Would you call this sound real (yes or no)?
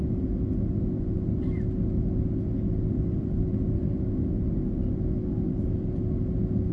yes